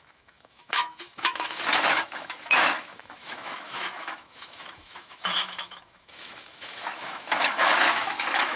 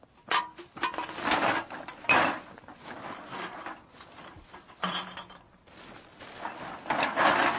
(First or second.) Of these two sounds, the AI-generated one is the first